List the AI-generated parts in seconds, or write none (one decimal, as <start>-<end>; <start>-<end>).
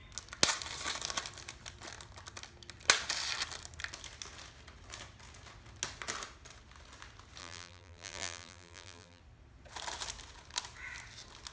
7.4-9.2